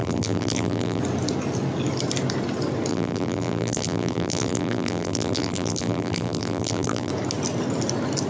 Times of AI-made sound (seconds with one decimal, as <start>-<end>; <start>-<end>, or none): 0.0-1.0; 2.9-7.1